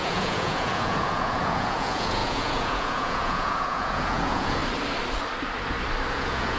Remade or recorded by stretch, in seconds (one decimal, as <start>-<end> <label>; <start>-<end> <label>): 0.0-4.6 remade; 4.6-6.1 recorded; 6.1-6.6 remade